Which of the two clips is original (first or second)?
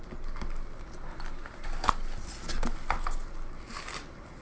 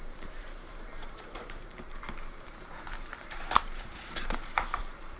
first